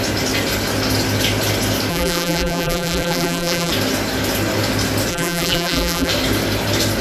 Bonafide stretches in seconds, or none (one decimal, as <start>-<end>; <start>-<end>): 0.0-1.9; 3.7-5.1; 6.1-7.0